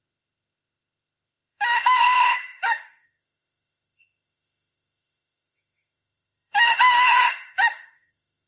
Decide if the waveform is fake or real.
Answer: fake